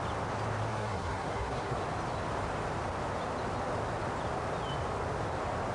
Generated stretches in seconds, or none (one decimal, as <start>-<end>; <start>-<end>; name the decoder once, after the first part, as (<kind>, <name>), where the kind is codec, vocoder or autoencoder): 0.7-1.8 (codec, SNAC)

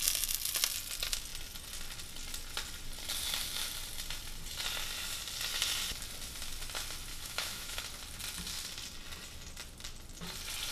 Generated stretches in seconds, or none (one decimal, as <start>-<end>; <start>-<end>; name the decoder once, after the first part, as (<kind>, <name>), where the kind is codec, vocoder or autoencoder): 7.1-7.8 (autoencoder, DAC-VAE)

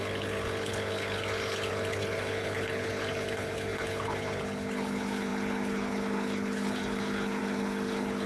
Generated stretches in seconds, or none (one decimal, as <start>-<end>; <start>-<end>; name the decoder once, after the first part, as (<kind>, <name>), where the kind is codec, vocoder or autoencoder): 0.0-8.3 (codec, HILCodec)

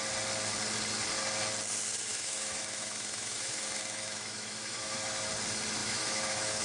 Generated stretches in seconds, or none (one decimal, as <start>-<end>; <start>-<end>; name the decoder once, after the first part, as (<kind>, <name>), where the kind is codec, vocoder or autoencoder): 2.1-5.3 (autoencoder, DAC-VAE); 5.8-6.6

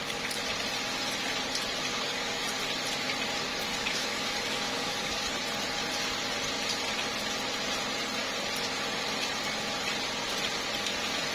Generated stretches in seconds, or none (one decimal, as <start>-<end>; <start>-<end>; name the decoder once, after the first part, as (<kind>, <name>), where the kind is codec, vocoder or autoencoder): 1.9-2.4 (codec, DAC); 3.5-5.3

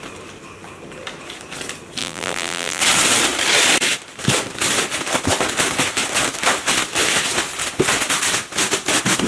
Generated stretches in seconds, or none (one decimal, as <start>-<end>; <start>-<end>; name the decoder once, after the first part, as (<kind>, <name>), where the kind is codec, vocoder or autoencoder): 2.0-2.8 (vocoder, BigVGAN v2)

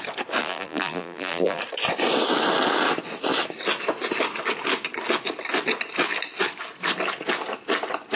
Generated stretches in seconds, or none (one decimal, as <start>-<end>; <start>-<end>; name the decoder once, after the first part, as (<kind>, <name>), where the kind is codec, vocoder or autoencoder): 0.4-1.6 (vocoder, BigVGAN v2)

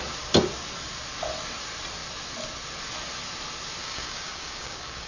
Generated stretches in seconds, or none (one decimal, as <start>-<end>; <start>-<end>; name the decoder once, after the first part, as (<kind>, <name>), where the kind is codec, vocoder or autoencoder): 3.8-5.1 (codec, DAC)